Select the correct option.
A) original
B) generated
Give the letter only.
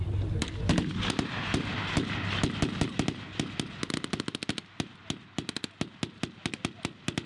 A